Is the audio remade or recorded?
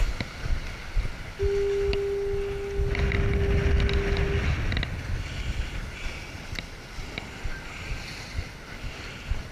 recorded